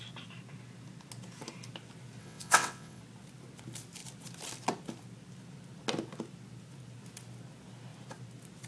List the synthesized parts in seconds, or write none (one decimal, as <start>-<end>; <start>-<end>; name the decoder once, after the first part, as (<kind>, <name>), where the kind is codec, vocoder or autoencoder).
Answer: 2.2-3.0 (vocoder, WaveNeXt)